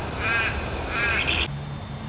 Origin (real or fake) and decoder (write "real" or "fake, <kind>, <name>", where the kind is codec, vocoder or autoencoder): real